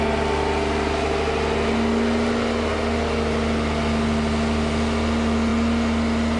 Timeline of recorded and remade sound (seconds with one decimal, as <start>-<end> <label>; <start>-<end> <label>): 0.0-6.4 recorded